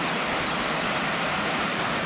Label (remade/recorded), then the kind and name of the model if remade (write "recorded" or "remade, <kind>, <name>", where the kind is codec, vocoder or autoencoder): recorded